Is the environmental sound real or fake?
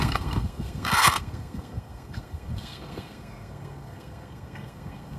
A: fake